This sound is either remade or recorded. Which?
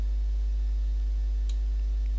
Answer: recorded